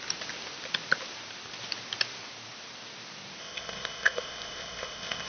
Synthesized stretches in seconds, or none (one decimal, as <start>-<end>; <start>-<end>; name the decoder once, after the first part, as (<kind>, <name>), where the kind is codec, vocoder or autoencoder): 3.4-5.3 (codec, ZipCodec)

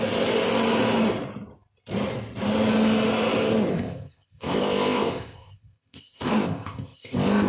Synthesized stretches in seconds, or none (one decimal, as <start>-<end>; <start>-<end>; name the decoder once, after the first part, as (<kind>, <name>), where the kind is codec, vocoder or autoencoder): 3.7-7.5 (codec, ZipCodec)